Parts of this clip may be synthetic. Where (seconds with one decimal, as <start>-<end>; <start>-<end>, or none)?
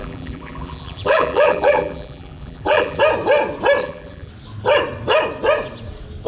0.0-3.0; 3.8-4.3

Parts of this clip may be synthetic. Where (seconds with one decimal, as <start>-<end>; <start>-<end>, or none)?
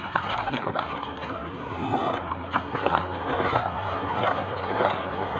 0.0-5.4